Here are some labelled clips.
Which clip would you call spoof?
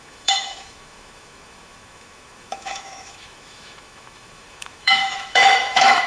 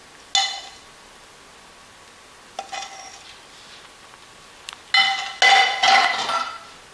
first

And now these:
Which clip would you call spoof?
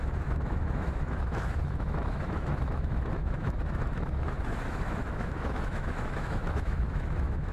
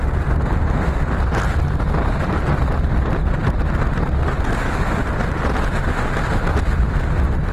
first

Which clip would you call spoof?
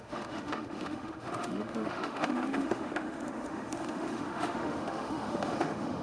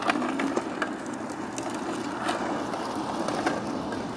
first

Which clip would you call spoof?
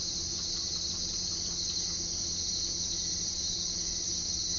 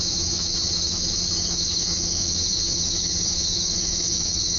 second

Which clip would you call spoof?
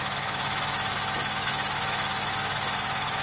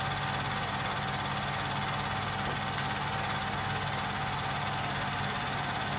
first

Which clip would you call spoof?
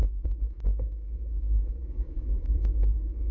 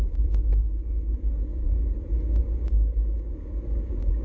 first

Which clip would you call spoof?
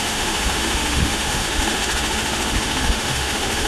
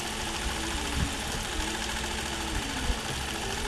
first